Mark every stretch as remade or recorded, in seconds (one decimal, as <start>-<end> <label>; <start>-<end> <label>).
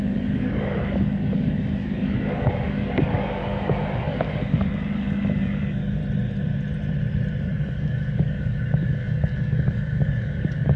0.0-6.0 remade; 6.0-7.4 recorded; 7.4-10.8 remade